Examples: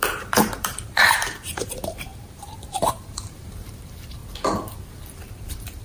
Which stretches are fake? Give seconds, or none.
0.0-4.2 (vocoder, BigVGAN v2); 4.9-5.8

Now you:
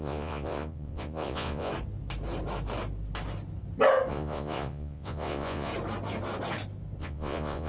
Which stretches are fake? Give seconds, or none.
0.0-1.7 (vocoder, Vocos); 4.1-5.7; 7.0-7.7